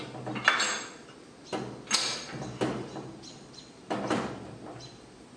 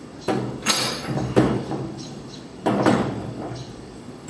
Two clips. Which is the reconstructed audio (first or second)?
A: second